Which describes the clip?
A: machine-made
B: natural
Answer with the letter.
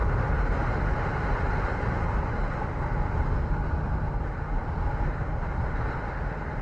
B